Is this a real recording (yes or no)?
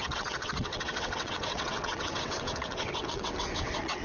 no